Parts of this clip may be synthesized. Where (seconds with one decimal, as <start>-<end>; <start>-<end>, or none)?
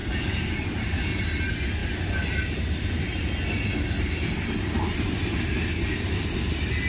0.0-1.2; 1.8-2.6